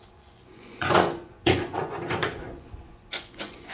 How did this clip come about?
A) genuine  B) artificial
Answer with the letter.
B